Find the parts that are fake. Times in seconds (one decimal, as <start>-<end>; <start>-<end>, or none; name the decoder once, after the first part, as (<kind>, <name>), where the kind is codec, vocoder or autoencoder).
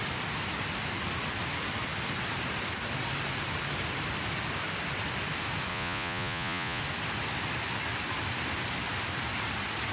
5.7-6.8 (vocoder, Vocos)